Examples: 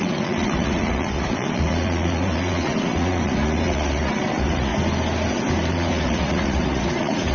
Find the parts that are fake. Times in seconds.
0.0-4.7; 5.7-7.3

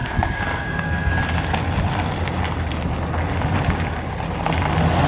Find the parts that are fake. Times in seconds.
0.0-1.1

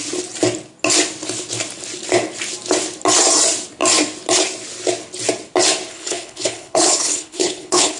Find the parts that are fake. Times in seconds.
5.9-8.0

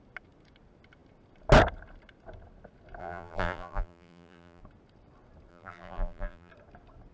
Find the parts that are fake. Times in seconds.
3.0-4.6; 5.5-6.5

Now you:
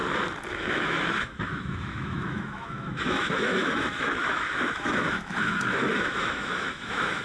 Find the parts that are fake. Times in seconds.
0.5-7.2

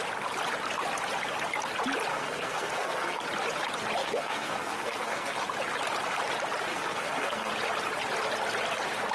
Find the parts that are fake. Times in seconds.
2.1-3.2; 4.0-5.4; 6.7-7.5